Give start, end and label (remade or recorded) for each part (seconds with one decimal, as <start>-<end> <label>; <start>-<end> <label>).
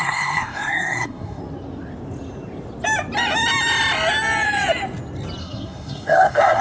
0.0-1.4 remade; 1.4-5.4 recorded; 5.4-6.6 remade